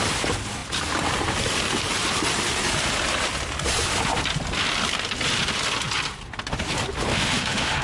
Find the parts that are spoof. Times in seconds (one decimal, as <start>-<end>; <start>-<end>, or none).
7.1-7.8